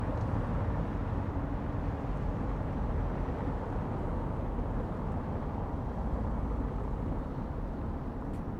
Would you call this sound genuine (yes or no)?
yes